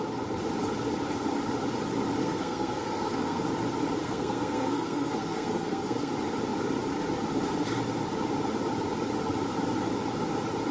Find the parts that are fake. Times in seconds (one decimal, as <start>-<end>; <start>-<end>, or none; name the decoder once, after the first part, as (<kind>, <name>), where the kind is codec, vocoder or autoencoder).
2.2-3.4 (codec, SNAC); 4.0-6.1